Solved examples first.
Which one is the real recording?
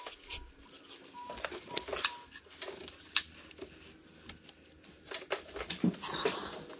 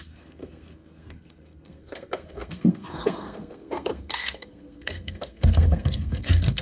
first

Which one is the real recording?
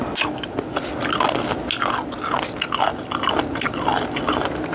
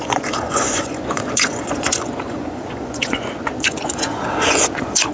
first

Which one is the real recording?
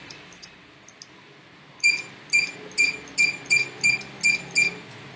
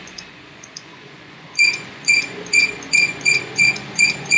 first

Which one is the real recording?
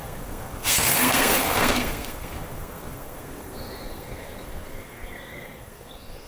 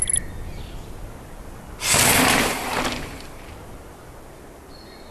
second